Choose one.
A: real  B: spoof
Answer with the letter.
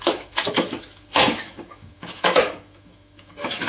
B